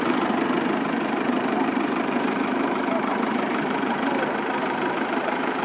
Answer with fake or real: fake